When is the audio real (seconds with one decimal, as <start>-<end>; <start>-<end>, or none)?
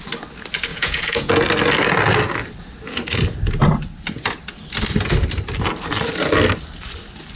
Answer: 0.0-0.7; 1.3-7.4